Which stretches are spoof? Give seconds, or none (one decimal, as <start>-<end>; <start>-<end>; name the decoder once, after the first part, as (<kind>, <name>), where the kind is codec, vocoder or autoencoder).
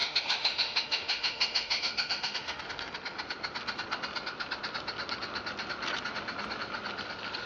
0.0-2.6 (autoencoder, DAC-VAE)